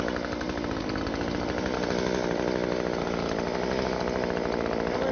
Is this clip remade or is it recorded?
recorded